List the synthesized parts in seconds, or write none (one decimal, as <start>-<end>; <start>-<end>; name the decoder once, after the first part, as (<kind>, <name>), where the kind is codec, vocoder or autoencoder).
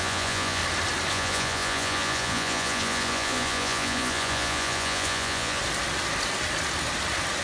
0.0-0.6 (vocoder, Vocos); 1.1-5.6